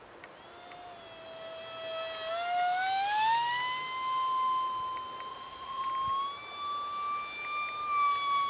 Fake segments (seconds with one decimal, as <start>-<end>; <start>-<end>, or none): 5.3-5.9